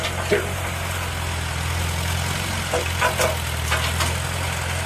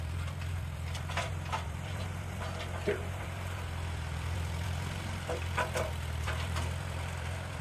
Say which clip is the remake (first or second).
second